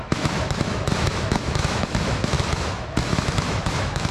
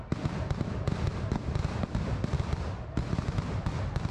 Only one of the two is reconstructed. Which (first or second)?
first